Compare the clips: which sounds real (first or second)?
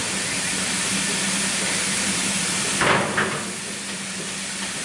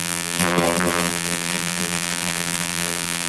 first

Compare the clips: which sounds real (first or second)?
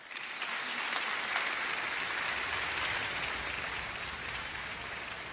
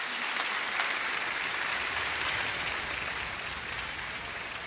first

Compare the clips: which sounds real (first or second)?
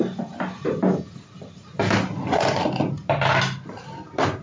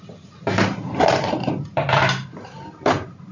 first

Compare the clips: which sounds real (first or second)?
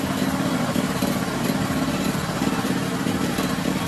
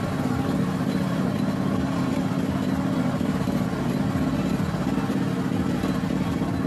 second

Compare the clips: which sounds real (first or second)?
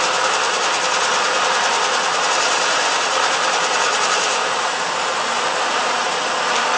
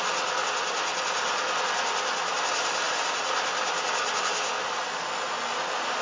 second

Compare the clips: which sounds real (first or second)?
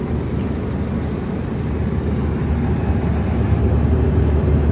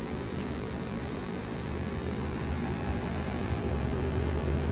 first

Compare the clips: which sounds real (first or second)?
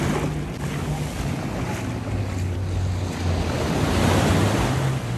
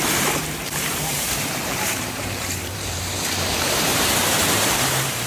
first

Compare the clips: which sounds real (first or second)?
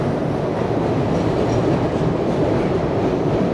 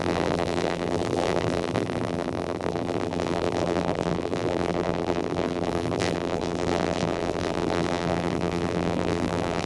first